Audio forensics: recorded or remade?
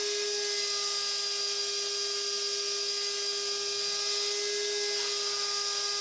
recorded